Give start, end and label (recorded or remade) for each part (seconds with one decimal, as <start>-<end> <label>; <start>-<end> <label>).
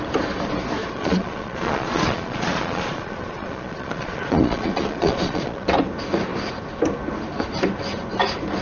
0.0-0.8 recorded; 0.8-5.7 remade; 5.7-8.6 recorded